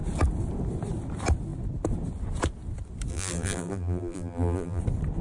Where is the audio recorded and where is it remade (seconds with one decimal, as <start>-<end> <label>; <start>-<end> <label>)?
0.0-3.1 recorded; 3.1-4.8 remade; 4.8-5.2 recorded